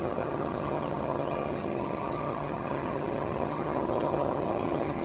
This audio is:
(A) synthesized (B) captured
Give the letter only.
A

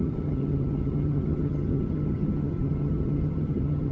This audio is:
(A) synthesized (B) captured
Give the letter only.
A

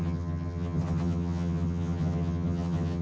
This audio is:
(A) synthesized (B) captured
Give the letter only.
A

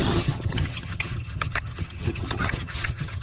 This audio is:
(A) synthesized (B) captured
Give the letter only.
A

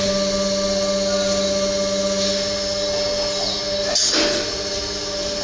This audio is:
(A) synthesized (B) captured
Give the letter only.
B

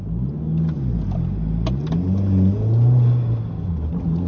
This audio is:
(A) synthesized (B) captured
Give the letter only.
B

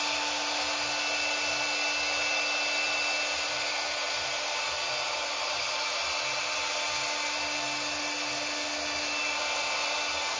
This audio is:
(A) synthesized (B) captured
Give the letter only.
B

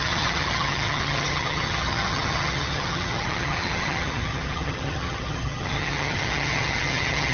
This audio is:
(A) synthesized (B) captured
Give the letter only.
A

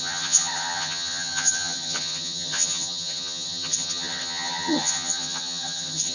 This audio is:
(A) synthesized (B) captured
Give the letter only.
A